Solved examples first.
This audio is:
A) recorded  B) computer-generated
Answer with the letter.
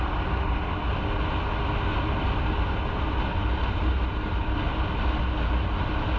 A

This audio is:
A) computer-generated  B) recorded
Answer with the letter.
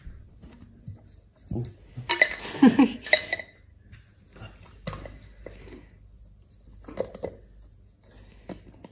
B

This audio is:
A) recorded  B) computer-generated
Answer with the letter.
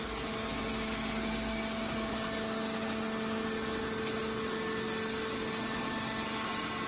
A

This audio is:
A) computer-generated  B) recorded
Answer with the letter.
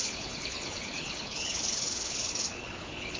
A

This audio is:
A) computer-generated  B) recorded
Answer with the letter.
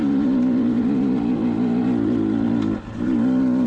B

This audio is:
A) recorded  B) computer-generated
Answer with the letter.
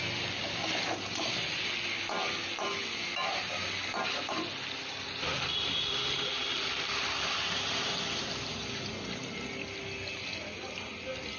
A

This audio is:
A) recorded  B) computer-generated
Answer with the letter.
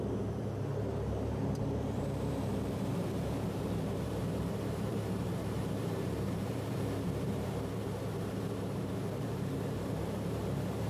B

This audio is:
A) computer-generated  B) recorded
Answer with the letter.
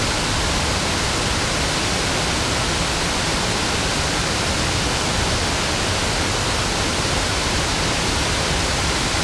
B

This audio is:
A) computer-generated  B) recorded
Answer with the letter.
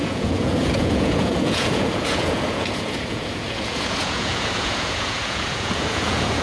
A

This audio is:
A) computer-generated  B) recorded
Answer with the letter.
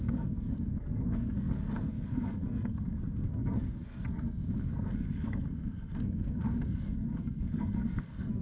A